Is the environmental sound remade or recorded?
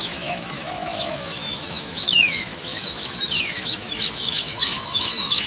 remade